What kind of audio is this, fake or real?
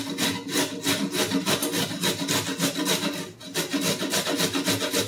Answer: real